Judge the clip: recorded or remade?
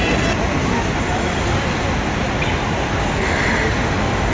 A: recorded